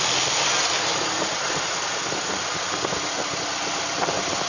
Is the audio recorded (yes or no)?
yes